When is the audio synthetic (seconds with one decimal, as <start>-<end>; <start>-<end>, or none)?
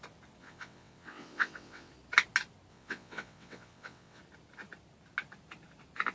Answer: 0.4-1.9; 2.7-4.2